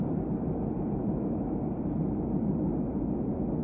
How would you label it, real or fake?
real